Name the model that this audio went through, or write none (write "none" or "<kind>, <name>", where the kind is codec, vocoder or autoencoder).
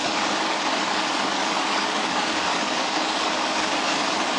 codec, DAC